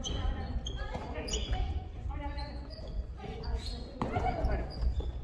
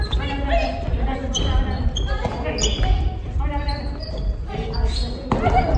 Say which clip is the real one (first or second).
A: second